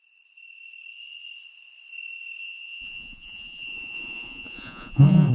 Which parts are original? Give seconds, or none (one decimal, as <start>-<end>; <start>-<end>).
0.0-2.4